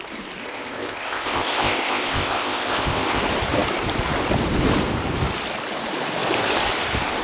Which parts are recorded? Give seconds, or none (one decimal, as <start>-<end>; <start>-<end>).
0.0-0.4; 3.2-7.2